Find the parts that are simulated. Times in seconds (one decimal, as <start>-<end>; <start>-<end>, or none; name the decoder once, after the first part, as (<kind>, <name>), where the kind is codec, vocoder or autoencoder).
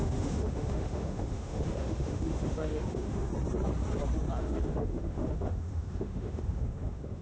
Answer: 0.0-3.3 (autoencoder, DAC-VAE); 4.4-7.2